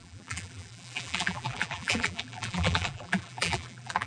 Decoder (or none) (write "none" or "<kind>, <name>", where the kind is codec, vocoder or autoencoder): vocoder, BigVGAN v2